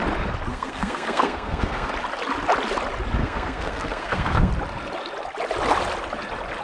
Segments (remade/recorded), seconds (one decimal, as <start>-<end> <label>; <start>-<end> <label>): 0.0-0.5 recorded; 0.5-1.9 remade; 1.9-3.2 recorded; 3.2-4.5 remade; 4.5-6.6 recorded